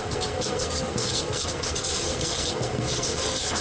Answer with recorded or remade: remade